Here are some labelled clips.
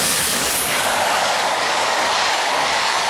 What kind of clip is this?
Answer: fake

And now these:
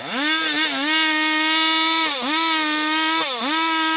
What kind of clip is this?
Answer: real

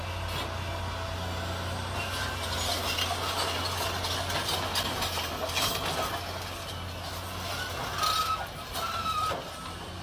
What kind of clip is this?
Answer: real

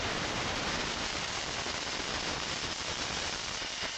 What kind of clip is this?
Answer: fake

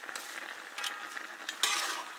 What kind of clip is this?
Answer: real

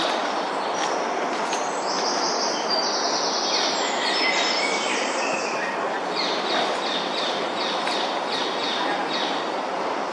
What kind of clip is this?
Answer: real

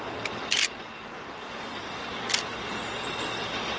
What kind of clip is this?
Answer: real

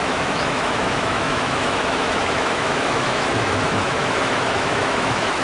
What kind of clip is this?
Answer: fake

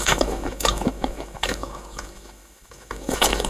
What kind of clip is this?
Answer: fake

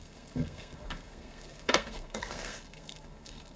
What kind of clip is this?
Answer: fake